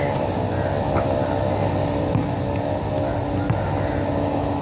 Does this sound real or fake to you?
real